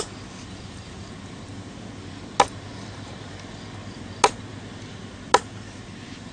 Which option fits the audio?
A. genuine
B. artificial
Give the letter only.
A